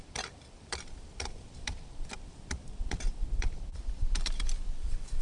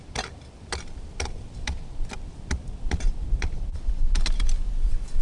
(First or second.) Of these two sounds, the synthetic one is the first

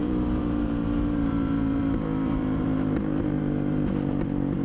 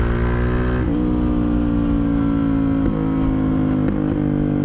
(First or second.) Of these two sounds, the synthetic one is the first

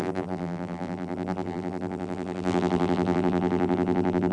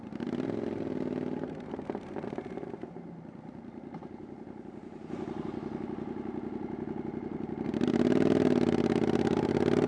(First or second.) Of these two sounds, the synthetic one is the first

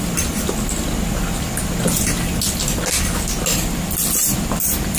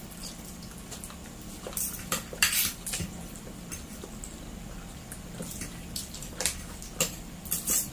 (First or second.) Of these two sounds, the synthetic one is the second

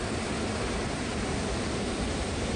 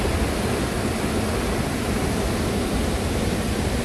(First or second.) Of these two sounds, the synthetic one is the first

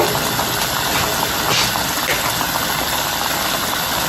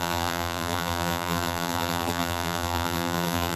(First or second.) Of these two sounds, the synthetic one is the second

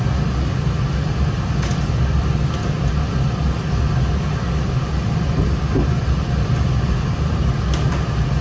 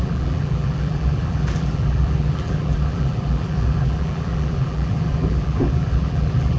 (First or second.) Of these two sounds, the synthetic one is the second